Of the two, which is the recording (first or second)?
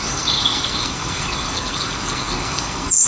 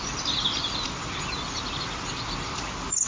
second